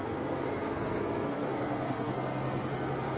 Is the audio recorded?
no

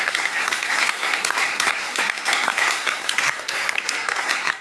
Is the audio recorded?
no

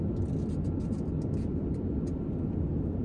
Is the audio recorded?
yes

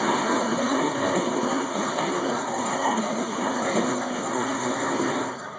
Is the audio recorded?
no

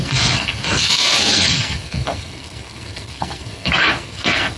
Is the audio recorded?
no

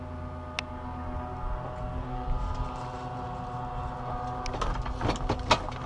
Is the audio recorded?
yes